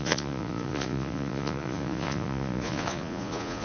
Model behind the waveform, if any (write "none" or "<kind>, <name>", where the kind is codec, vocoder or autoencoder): vocoder, Vocos